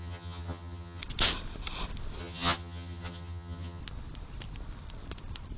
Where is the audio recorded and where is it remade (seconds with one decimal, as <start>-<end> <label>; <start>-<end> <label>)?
0.0-1.0 remade; 1.0-2.2 recorded; 2.2-3.8 remade; 3.8-5.6 recorded